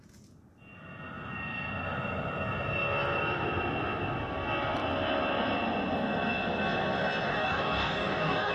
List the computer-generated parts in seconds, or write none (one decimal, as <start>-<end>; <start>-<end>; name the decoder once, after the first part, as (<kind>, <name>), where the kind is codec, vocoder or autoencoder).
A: 7.3-8.5 (codec, DAC)